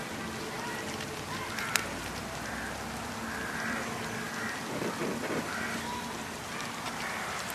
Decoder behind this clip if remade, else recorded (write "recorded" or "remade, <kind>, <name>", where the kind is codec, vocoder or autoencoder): recorded